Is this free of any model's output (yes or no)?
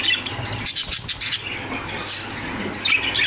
yes